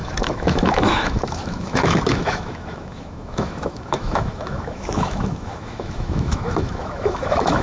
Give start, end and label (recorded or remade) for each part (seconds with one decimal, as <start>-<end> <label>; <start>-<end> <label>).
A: 0.0-7.6 remade